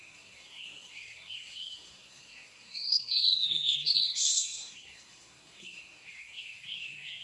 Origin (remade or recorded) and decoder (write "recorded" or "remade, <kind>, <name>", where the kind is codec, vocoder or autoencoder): remade, codec, SNAC